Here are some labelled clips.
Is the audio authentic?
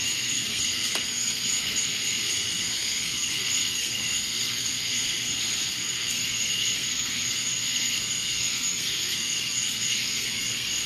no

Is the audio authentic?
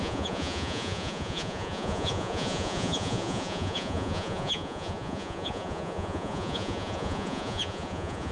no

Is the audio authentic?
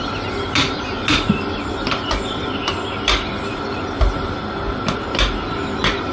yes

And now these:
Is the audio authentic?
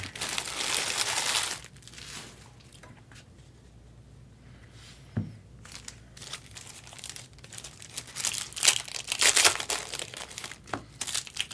yes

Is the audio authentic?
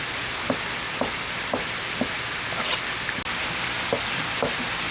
yes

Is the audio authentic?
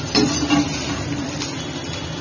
yes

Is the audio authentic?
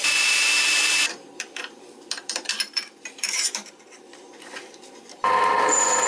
no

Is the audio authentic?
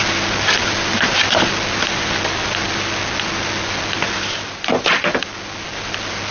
yes